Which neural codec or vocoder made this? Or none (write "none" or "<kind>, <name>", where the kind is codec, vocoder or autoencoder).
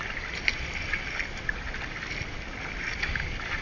none